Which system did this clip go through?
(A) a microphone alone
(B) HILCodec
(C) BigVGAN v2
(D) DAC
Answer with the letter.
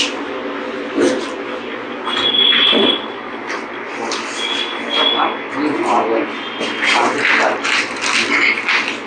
A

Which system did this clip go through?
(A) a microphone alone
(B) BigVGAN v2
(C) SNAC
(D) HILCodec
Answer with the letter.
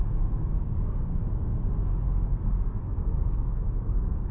C